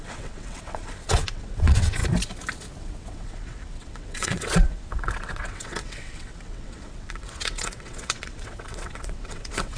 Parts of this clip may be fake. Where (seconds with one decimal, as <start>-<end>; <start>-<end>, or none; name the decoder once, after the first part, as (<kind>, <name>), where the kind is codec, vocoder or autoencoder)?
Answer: 0.0-2.0 (vocoder, WaveNeXt); 2.8-9.8